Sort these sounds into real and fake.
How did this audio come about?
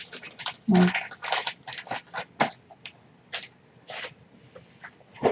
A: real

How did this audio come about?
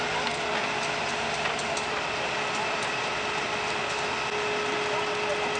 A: real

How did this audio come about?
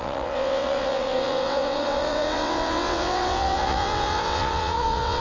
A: fake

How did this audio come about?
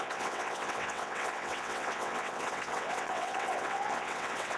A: fake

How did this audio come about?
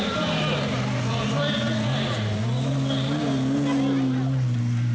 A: real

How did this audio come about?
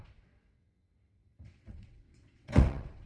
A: fake